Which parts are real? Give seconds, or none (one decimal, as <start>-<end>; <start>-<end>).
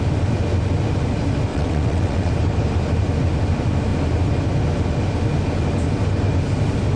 0.0-1.5; 2.3-7.0